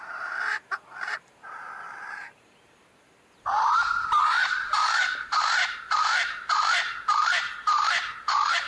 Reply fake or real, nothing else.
fake